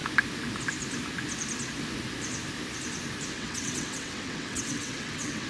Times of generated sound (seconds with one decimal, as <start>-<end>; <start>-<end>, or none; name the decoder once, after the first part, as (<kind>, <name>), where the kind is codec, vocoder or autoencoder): 3.3-5.5 (vocoder, WaveNeXt)